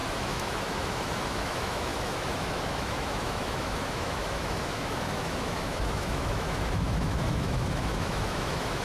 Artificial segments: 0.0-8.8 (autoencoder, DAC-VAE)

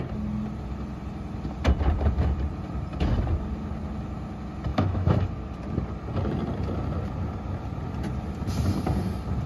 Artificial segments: 4.7-5.3 (autoencoder, DAC-VAE)

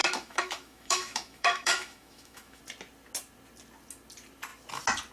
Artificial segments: 0.0-2.6 (autoencoder, DAC-VAE)

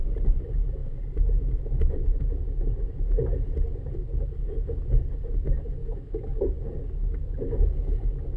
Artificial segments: 5.8-6.5 (autoencoder, DAC-VAE)

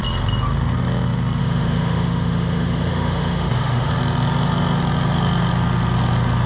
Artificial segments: 1.4-3.9 (autoencoder, DAC-VAE)